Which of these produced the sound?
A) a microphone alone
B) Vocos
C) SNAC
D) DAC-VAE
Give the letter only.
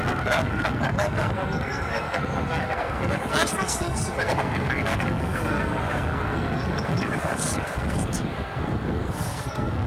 C